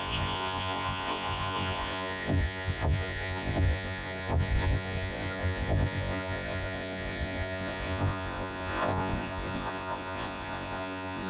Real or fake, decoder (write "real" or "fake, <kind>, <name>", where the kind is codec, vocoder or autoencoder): fake, vocoder, Vocos